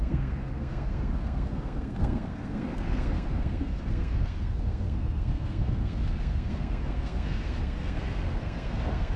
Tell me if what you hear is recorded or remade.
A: remade